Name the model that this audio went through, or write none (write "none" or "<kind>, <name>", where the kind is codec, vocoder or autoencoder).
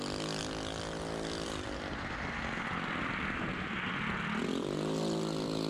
none